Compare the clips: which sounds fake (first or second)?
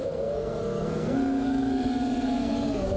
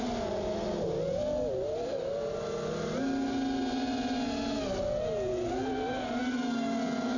first